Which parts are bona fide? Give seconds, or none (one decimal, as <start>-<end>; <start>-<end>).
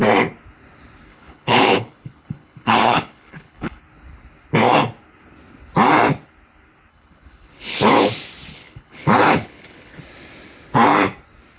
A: 0.0-1.1; 3.8-6.9; 8.1-8.5; 10.0-11.6